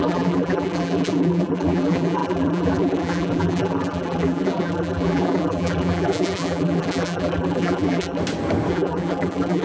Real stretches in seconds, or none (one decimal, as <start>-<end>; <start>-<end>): 8.2-8.7